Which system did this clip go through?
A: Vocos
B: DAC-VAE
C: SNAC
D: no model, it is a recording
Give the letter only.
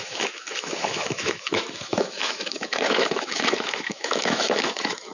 B